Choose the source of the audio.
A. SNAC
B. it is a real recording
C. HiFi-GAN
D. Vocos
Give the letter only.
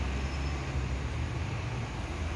B